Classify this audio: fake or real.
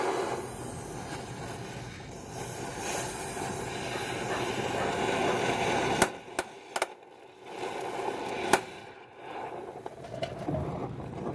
real